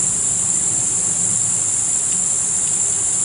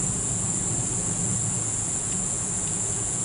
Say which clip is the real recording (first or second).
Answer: first